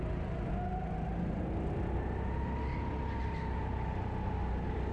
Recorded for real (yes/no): yes